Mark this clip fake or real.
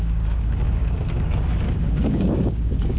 fake